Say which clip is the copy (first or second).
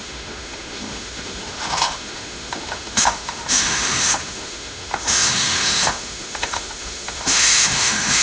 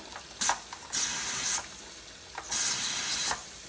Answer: first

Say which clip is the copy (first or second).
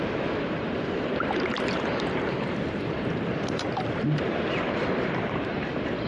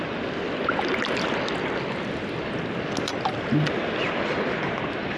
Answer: first